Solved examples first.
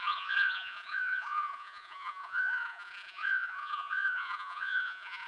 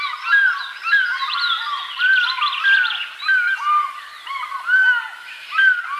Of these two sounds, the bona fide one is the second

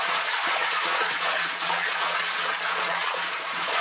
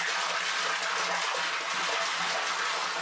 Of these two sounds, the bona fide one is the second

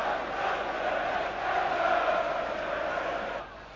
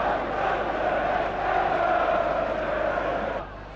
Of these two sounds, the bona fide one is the second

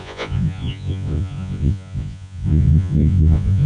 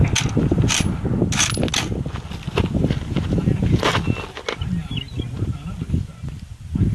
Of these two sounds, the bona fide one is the second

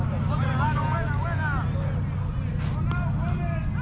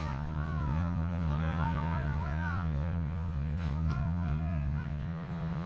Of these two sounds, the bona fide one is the first